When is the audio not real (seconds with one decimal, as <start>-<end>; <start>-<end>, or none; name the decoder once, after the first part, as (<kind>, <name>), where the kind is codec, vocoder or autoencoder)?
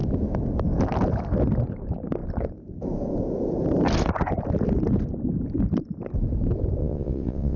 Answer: 6.8-7.6 (vocoder, WaveNeXt)